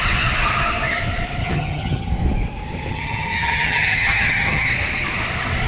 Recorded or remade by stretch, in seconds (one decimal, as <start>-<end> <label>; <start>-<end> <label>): 0.0-1.4 recorded; 1.4-2.1 remade; 2.1-2.9 recorded; 2.9-4.7 remade; 4.7-5.7 recorded